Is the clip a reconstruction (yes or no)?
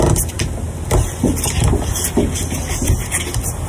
no